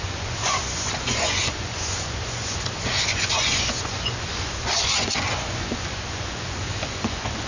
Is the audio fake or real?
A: fake